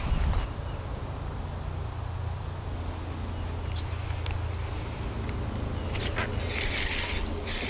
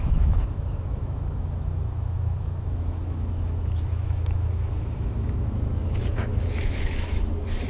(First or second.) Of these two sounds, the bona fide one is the first